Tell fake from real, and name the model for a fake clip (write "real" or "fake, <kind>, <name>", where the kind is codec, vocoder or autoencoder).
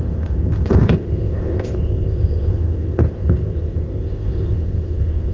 fake, codec, ZipCodec